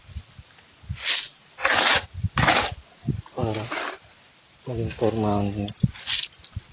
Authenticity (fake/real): real